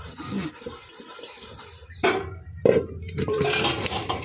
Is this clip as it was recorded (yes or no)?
no